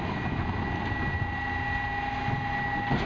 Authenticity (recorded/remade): recorded